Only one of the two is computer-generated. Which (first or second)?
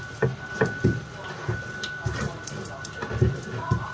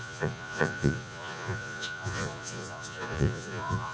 second